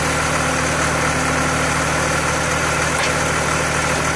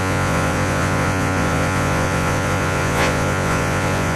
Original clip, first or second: first